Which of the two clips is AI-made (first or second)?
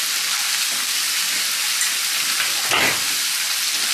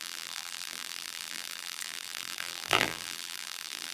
second